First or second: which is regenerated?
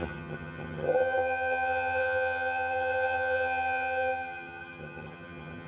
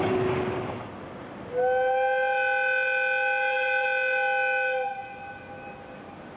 first